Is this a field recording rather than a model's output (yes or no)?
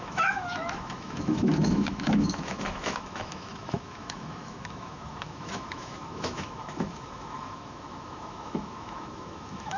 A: no